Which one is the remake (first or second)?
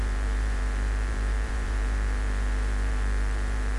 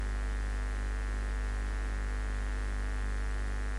first